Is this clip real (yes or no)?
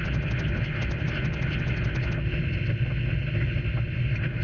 yes